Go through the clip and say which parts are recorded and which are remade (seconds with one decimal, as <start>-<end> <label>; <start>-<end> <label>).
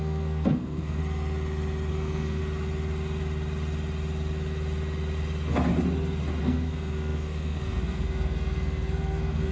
0.0-1.0 remade; 1.0-1.9 recorded; 1.9-2.4 remade; 2.4-6.4 recorded; 6.4-9.5 remade